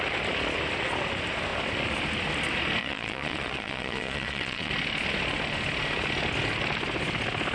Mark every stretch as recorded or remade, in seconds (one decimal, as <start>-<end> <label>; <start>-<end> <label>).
0.0-2.8 recorded; 2.8-4.7 remade; 4.7-7.5 recorded